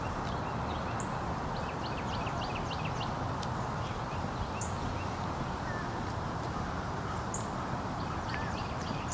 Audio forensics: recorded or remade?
recorded